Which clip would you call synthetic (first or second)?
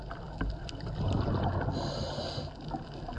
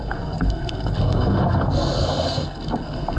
second